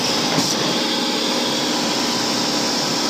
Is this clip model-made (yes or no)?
no